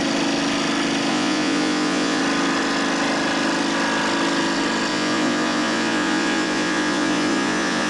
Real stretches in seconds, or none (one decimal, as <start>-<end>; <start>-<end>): 0.0-1.1; 2.2-4.9